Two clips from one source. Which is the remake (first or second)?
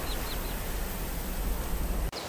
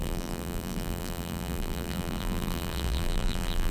second